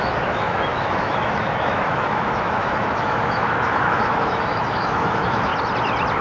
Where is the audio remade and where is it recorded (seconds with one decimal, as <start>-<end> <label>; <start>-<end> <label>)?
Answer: 0.0-5.5 remade; 5.5-6.2 recorded